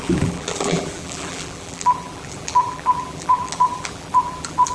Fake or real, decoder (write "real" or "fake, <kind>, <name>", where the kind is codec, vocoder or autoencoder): fake, vocoder, BigVGAN v2